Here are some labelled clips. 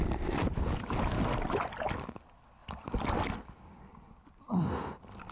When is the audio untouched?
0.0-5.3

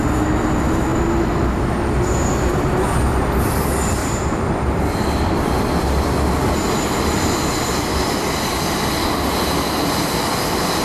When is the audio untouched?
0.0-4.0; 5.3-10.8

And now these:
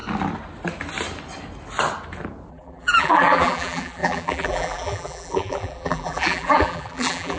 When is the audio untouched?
0.0-2.5

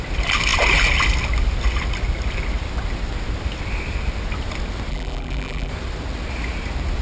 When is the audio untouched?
0.0-4.9; 5.7-7.0

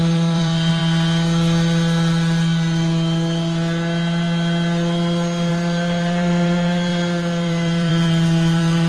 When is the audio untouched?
0.8-5.5